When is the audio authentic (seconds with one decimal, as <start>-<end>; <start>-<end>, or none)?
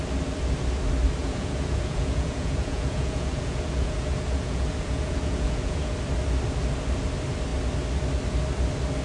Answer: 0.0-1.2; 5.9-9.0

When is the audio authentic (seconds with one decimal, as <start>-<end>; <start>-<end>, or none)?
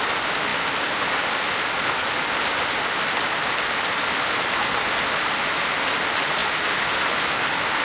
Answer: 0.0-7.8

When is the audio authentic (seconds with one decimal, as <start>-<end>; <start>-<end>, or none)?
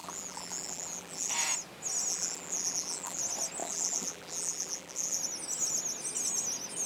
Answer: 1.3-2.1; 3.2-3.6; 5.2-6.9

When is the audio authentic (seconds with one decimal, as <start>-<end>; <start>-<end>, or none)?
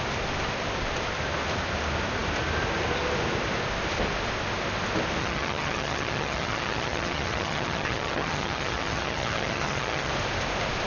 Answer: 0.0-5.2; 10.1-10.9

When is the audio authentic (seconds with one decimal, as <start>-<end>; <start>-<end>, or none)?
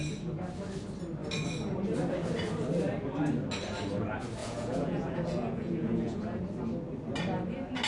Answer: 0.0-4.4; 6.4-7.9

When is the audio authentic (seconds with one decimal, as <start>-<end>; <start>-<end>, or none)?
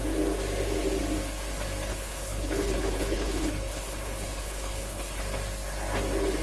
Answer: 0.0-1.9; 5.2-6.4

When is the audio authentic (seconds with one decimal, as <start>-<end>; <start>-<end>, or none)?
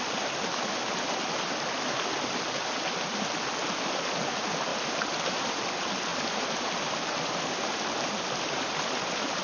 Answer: 4.7-5.4